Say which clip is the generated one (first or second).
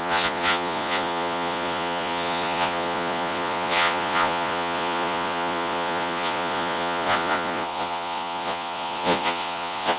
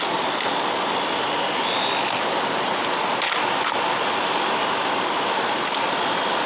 first